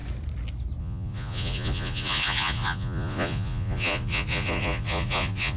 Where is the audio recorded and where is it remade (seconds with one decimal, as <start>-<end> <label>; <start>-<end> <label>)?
0.0-0.8 recorded; 0.8-5.6 remade

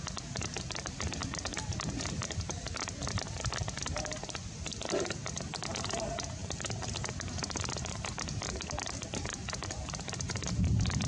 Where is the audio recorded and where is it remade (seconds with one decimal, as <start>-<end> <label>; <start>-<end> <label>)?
0.0-11.1 recorded